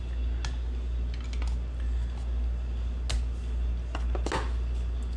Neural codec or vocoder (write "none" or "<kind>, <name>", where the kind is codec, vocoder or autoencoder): none